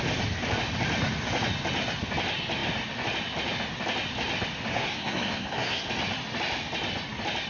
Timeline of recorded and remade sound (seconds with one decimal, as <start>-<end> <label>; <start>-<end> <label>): 0.0-4.7 recorded; 4.7-5.9 remade; 5.9-7.5 recorded

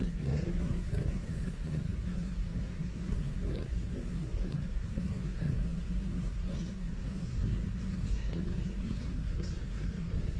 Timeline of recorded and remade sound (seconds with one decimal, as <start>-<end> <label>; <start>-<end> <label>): 0.0-10.4 remade